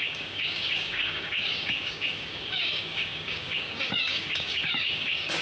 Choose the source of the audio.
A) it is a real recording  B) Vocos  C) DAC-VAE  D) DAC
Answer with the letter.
D